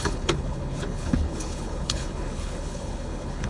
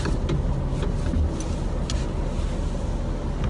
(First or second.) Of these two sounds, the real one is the second